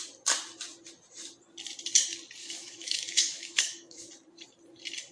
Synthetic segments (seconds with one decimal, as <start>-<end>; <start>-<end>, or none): 2.4-4.1